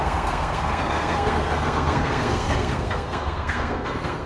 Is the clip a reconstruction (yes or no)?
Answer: yes